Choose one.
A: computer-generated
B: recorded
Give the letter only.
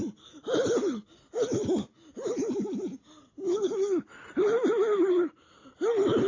B